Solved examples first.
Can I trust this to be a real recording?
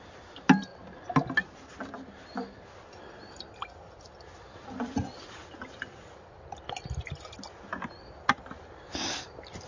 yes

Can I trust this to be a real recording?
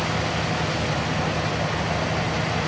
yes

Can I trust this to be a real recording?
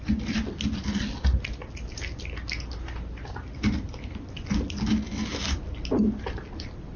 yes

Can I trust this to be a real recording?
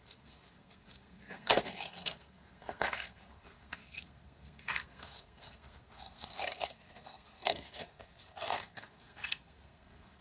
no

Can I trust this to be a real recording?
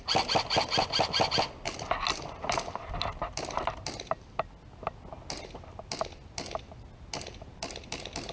yes